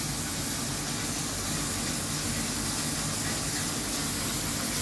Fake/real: real